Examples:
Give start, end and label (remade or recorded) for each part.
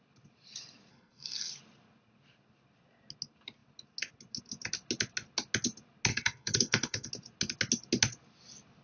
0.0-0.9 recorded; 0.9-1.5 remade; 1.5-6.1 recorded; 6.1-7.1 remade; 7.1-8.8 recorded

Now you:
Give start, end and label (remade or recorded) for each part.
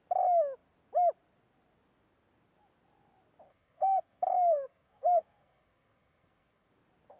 0.0-3.5 recorded; 3.5-6.7 remade; 6.7-7.2 recorded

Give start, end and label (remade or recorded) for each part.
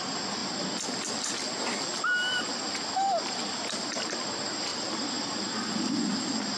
0.0-6.6 recorded